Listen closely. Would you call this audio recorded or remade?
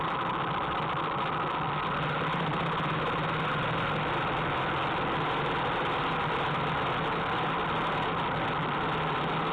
recorded